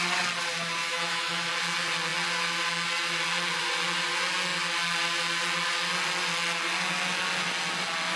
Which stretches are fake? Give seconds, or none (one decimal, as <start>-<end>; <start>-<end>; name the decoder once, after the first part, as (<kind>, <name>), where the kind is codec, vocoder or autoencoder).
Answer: 0.8-1.5 (autoencoder, DAC-VAE)